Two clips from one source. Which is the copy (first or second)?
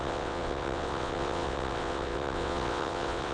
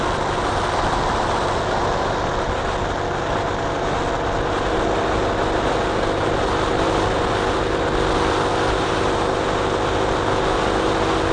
first